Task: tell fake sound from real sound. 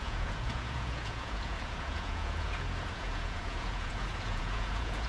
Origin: fake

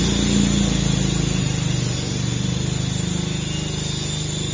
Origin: real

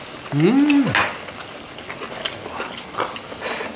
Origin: real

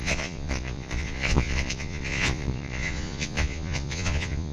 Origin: fake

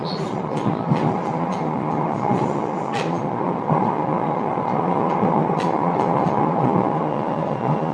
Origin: fake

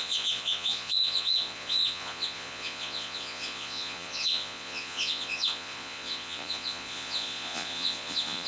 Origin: fake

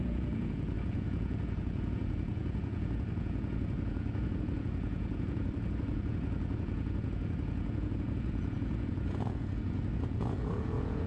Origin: fake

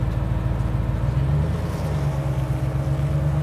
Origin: real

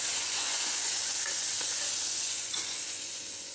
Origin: fake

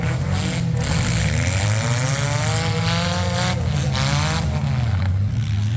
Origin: real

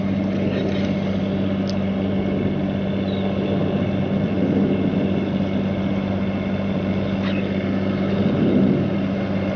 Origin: real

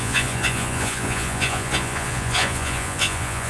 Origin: fake